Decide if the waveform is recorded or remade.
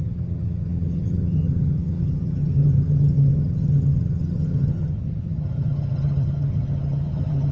remade